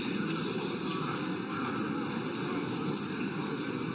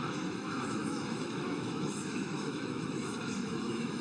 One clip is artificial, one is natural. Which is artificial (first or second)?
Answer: second